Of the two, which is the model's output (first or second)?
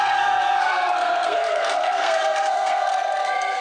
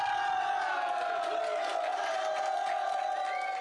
first